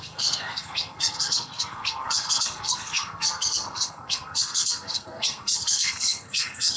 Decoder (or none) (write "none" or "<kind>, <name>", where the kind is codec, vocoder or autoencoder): codec, SNAC